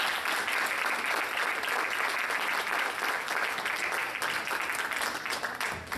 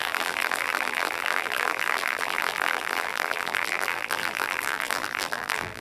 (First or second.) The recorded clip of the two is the first